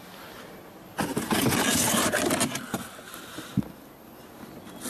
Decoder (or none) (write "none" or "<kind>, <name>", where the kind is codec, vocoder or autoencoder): none